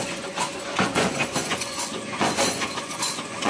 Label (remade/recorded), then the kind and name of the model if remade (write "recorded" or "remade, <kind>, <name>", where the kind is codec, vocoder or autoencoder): remade, vocoder, Vocos